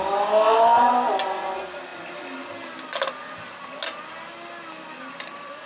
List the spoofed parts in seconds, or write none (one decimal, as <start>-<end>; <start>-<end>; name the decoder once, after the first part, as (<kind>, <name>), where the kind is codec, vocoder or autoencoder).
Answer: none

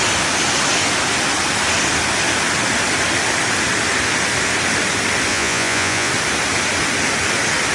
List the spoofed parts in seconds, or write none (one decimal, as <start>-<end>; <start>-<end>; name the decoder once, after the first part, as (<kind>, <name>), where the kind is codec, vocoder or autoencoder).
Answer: 5.3-6.1 (vocoder, Vocos)

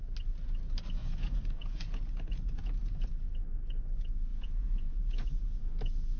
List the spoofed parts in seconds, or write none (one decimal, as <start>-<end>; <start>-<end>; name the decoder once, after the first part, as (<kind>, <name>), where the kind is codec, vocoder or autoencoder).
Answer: 1.0-3.1 (vocoder, Vocos); 4.3-5.8